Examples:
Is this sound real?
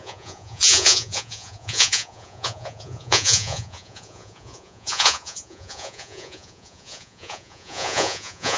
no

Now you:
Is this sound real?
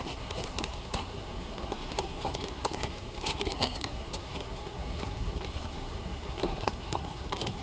no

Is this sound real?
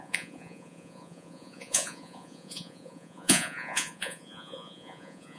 no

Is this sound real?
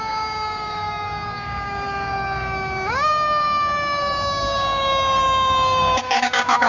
no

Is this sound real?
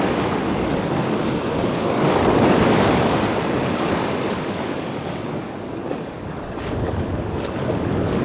no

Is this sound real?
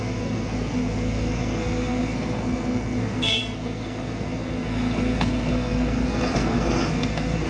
no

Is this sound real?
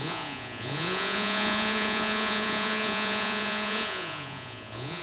no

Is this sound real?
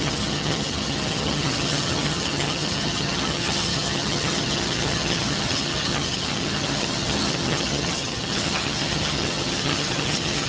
no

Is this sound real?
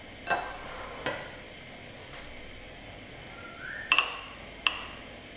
yes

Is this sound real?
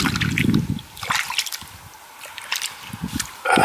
yes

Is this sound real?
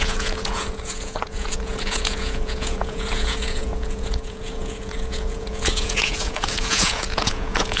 no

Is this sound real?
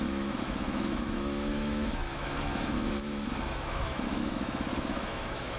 no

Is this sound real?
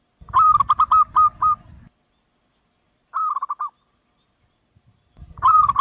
yes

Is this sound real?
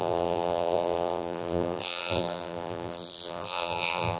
no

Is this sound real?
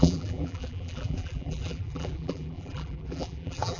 no